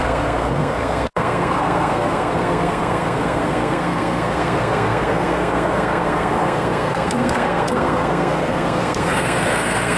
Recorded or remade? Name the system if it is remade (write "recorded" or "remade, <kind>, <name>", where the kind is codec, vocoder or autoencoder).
remade, codec, SNAC